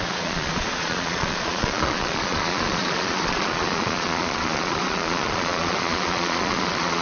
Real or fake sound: fake